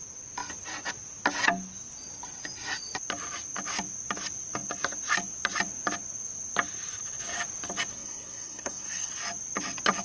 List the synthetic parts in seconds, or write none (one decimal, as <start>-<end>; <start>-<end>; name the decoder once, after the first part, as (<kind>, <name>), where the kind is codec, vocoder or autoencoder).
7.9-9.1 (codec, SNAC)